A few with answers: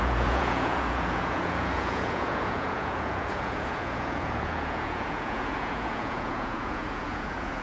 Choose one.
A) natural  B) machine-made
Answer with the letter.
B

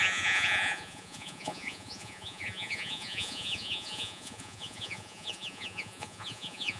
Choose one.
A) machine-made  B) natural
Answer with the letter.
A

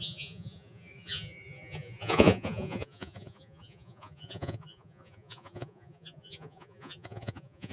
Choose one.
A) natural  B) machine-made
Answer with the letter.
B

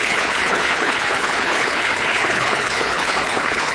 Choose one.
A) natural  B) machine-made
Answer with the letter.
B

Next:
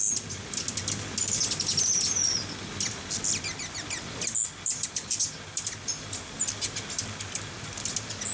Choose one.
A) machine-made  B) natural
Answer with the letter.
B